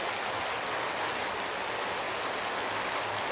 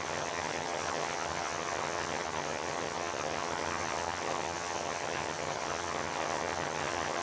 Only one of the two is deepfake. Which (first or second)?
second